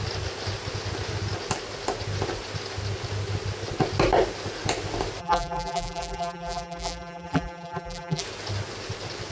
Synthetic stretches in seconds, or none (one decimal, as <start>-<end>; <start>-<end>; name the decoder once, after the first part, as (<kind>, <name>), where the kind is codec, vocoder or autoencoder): 5.2-8.2 (vocoder, BigVGAN v2)